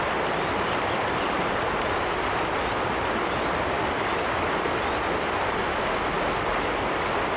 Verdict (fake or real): real